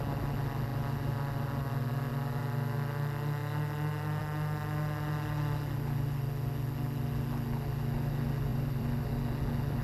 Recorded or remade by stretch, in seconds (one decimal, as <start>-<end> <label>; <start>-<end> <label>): 0.0-8.5 recorded; 8.5-9.1 remade; 9.1-9.8 recorded